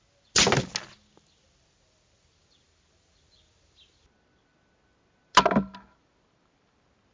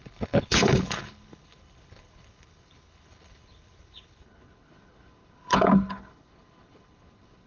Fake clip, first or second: second